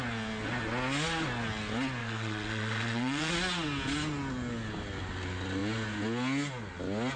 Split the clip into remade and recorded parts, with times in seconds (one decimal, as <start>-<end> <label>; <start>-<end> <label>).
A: 0.0-2.0 recorded; 2.0-3.3 remade; 3.3-7.2 recorded